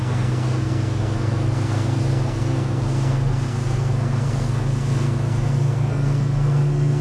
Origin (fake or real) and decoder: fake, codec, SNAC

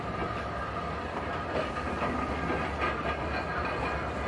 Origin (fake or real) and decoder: real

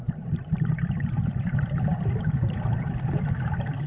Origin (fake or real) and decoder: real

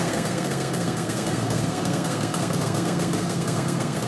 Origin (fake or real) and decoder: fake, codec, SNAC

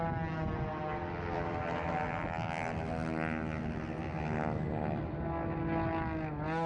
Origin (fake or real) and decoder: real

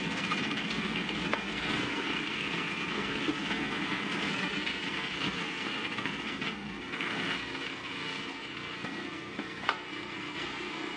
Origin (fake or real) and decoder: fake, codec, SNAC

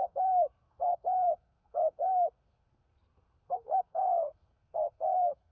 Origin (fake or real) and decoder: fake, codec, SNAC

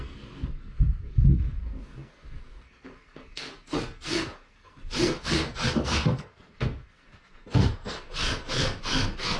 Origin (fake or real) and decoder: fake, codec, SNAC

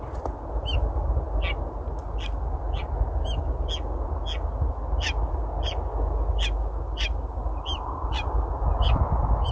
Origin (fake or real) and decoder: real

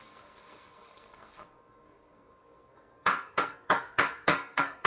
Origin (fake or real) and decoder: fake, codec, SNAC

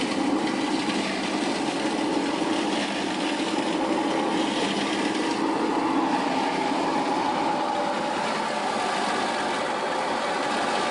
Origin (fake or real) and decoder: real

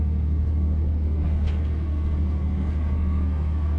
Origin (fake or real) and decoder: fake, codec, SNAC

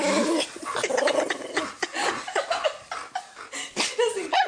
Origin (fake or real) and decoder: real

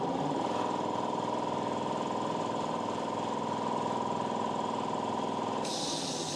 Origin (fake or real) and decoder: real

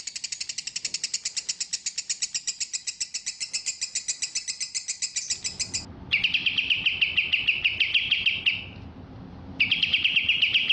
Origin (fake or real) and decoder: real